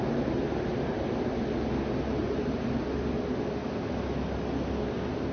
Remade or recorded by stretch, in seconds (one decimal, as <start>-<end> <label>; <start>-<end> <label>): 0.0-5.3 recorded